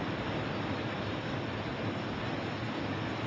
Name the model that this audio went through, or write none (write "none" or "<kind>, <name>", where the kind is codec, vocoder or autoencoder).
none